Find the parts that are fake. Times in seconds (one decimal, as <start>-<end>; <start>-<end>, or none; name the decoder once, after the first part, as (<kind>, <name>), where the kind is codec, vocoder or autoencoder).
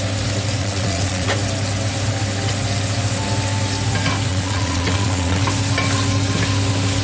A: 0.6-1.3 (vocoder, Vocos); 4.3-5.4